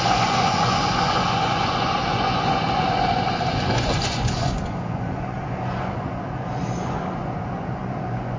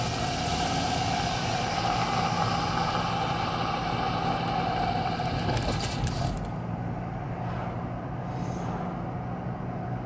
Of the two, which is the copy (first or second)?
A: first